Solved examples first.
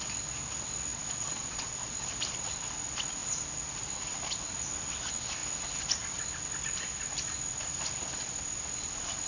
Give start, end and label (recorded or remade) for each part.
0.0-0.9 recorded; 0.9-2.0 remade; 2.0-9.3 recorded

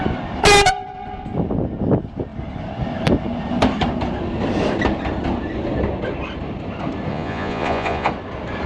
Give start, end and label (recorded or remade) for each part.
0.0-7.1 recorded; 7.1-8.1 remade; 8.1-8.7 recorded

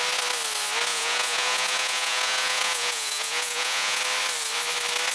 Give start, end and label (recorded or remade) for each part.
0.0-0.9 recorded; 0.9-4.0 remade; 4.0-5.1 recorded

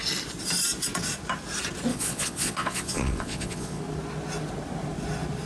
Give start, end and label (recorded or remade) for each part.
0.0-1.9 recorded; 1.9-3.8 remade; 3.8-5.5 recorded